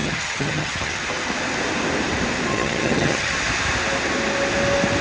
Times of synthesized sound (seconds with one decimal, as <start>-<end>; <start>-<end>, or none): 0.0-1.0; 2.5-3.3